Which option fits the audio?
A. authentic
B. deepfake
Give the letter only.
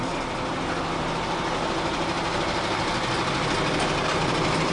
A